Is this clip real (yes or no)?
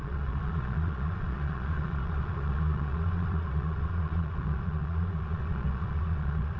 no